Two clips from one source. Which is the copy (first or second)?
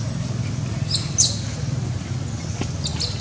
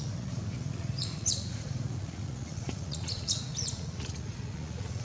second